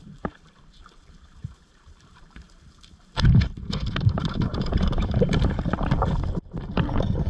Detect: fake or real fake